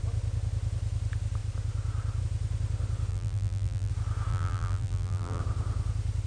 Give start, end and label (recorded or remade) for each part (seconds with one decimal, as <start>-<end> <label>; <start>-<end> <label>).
0.0-3.1 recorded; 3.1-3.9 remade; 3.9-4.3 recorded; 4.3-5.4 remade; 5.4-6.3 recorded